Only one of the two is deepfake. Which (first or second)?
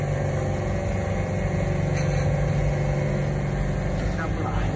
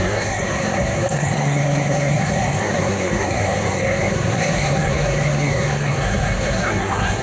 second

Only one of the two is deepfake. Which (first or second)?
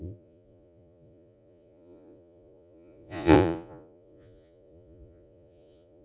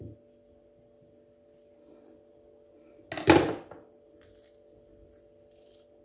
first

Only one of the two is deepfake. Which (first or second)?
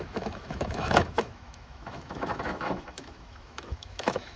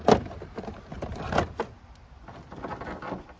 first